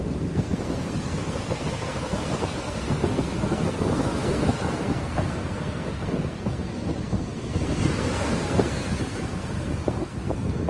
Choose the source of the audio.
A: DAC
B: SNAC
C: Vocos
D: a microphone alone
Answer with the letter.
B